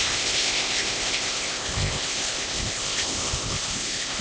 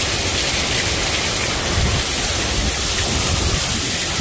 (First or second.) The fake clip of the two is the first